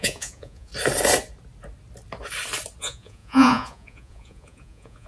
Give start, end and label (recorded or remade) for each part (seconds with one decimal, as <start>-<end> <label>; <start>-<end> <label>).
0.0-0.7 remade; 0.7-2.8 recorded; 2.8-5.1 remade